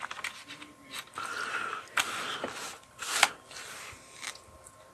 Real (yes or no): yes